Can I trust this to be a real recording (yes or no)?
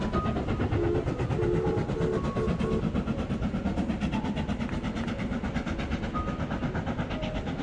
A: yes